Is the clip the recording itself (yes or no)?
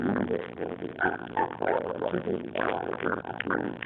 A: no